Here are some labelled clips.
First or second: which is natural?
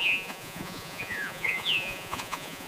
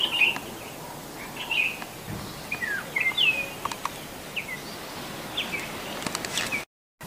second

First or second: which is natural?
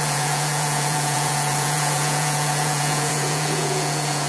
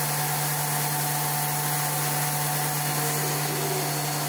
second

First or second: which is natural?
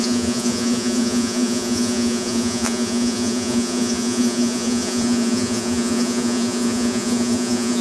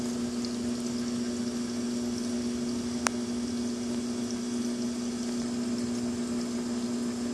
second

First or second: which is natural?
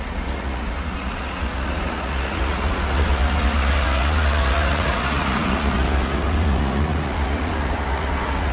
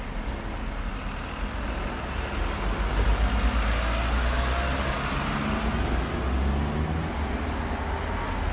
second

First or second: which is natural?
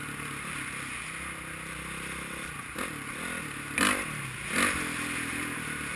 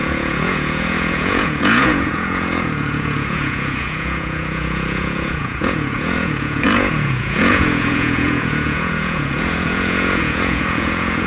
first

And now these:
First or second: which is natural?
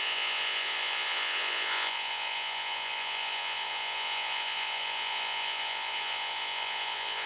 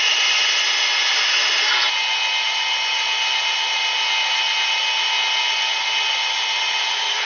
second